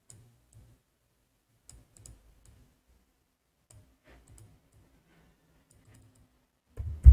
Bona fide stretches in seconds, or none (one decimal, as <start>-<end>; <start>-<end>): 0.0-7.1